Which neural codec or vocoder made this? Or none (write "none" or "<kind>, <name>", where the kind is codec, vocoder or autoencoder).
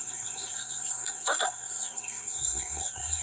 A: codec, SNAC